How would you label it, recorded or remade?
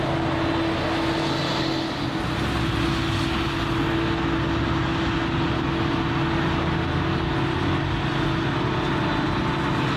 recorded